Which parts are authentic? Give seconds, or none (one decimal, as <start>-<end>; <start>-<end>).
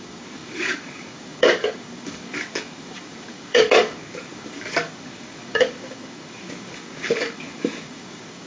none